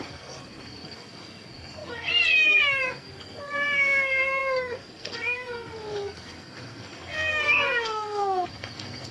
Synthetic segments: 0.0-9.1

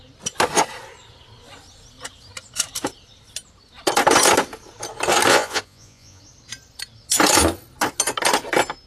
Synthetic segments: 5.3-6.2

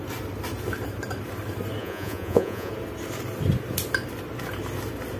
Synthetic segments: 1.8-2.7

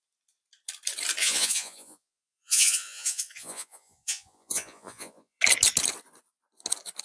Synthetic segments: 1.2-5.4